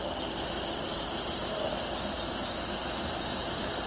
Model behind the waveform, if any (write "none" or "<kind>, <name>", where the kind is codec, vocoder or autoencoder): none